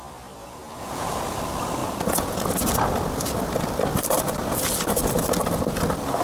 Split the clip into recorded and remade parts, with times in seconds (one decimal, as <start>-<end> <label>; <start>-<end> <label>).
0.0-0.4 recorded; 0.4-1.2 remade; 1.2-1.8 recorded; 1.8-2.5 remade; 2.5-6.2 recorded